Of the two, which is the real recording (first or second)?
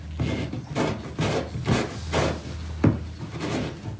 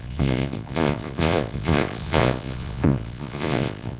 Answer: first